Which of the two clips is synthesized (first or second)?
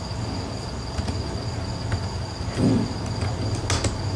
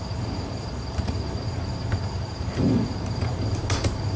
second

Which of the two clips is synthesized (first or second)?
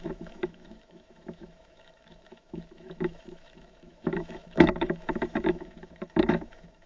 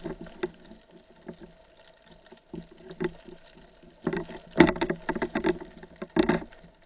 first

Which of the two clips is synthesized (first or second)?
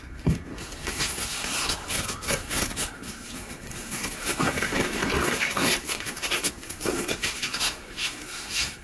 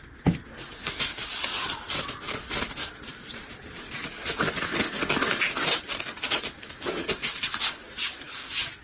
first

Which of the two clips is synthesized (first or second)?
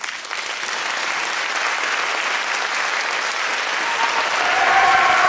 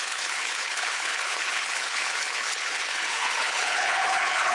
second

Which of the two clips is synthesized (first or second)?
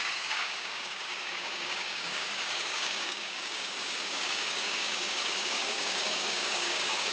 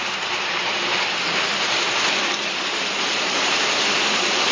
first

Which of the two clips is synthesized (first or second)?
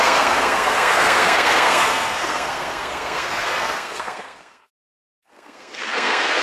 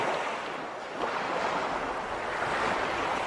first